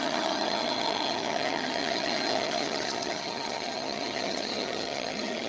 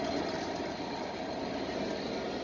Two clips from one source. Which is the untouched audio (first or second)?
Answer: second